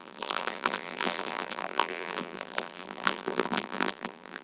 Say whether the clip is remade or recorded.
remade